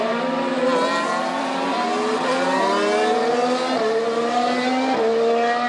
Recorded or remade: recorded